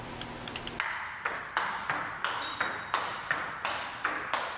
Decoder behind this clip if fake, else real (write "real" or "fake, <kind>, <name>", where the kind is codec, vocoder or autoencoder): real